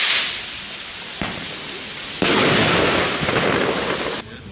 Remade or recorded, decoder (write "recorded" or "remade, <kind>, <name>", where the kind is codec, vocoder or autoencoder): recorded